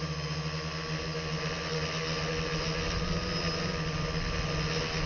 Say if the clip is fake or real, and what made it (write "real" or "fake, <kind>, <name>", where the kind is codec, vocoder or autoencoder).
real